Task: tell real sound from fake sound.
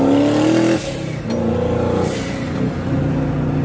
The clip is real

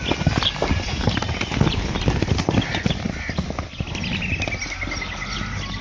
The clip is real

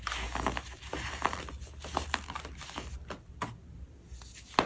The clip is real